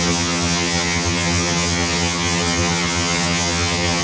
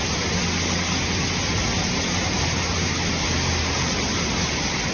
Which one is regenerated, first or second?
first